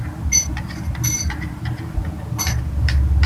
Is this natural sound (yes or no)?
yes